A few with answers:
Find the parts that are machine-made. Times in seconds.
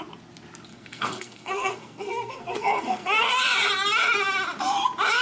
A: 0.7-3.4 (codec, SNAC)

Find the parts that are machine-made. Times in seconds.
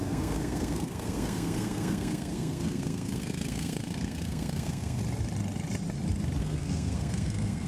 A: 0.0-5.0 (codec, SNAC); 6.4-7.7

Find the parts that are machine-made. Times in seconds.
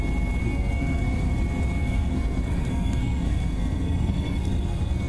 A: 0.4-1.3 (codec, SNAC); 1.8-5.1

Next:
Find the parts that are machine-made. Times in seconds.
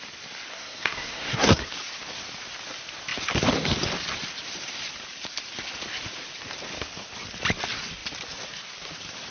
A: 0.5-1.7 (codec, SNAC)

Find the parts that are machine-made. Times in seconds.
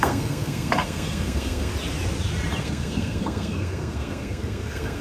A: 0.0-1.7 (codec, SNAC); 2.6-5.0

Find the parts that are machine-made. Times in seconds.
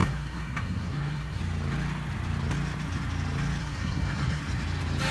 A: 0.0-1.4 (codec, SNAC); 3.6-4.4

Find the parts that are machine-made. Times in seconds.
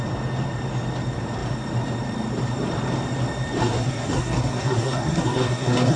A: 3.6-6.0 (codec, SNAC)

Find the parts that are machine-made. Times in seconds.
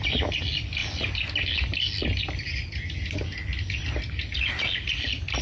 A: none